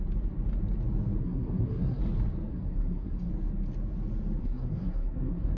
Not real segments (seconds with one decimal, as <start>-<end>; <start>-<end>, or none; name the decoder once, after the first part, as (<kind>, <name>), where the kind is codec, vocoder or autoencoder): 1.2-2.0 (codec, SNAC); 2.5-3.3; 4.4-5.6